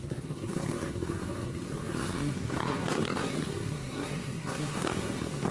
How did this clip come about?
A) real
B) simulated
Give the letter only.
B